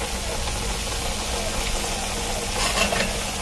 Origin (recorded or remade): remade